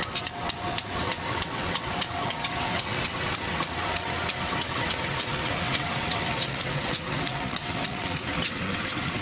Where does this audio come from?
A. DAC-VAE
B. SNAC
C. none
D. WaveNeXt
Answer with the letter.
D